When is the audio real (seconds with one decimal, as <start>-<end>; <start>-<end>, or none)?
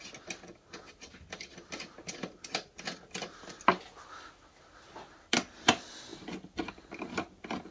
0.0-7.7